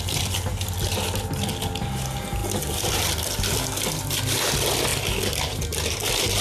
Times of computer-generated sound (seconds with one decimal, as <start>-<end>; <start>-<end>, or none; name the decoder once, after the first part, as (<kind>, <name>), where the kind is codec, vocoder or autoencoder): none